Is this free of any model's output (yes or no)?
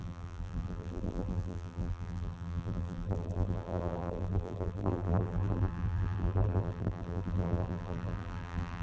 no